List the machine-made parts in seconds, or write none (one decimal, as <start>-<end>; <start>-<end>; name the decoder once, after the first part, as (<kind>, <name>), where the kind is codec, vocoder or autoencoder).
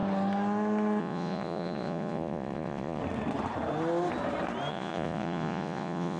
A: 1.0-3.0 (vocoder, Vocos); 4.7-6.2